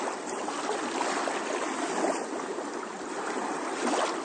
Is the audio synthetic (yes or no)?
no